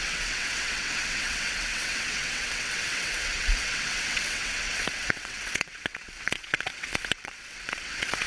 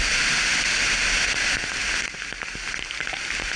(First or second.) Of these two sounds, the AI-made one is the first